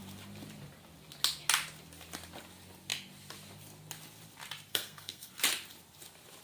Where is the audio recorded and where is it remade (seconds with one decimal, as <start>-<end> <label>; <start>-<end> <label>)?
0.0-4.7 recorded; 4.7-5.3 remade; 5.3-6.4 recorded